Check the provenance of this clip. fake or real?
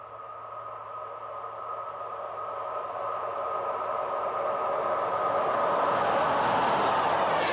real